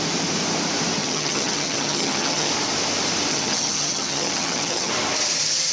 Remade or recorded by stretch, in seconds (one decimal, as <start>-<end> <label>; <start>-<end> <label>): 0.0-1.0 recorded; 1.0-2.5 remade; 2.5-3.3 recorded; 3.3-4.9 remade; 4.9-5.7 recorded